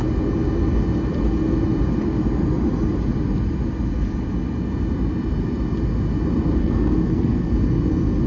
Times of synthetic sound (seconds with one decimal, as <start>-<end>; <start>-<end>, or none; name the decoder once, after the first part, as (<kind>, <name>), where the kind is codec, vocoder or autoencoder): 6.6-7.5 (codec, SNAC)